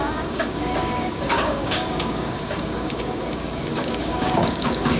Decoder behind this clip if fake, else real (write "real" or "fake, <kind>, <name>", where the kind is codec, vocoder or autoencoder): fake, codec, DAC